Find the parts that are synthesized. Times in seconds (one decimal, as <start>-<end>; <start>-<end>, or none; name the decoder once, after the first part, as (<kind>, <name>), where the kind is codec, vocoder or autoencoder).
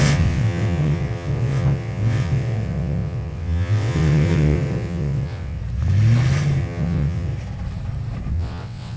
0.0-5.6 (vocoder, WaveNeXt); 6.6-7.3; 8.3-9.0